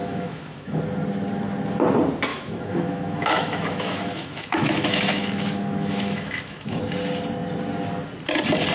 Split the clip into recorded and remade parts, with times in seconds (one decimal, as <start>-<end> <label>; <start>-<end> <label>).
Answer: 0.0-0.8 remade; 0.8-2.3 recorded; 2.3-6.8 remade; 6.8-8.7 recorded